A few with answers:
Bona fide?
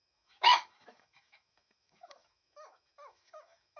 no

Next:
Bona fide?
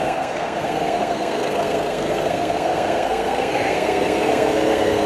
no